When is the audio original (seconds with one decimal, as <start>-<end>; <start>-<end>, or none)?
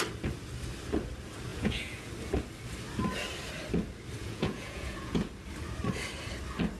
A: 0.0-1.5; 2.1-4.2; 5.3-6.8